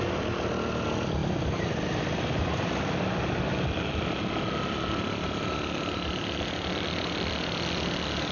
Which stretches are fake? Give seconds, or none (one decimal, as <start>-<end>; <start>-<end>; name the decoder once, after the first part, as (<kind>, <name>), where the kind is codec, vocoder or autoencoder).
none